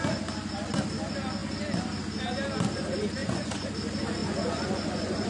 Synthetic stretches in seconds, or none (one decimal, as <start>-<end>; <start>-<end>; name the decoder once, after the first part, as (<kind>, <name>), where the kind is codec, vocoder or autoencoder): 3.2-3.7 (vocoder, Vocos); 4.2-5.3